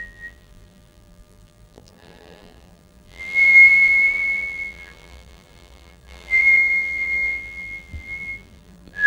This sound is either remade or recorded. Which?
remade